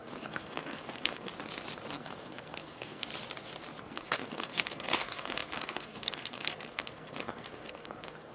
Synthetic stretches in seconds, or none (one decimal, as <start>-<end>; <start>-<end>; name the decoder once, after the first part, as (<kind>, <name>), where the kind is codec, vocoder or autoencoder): 0.0-1.3 (codec, SNAC); 1.9-3.1; 3.8-8.3